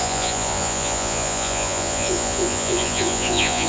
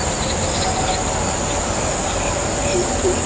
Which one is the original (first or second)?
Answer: second